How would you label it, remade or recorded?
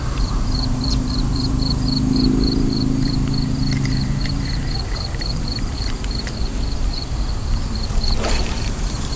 remade